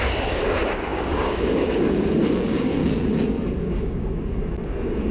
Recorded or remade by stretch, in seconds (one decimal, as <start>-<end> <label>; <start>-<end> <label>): 0.0-2.8 remade; 2.8-3.6 recorded; 3.6-5.1 remade